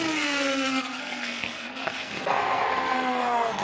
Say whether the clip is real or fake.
fake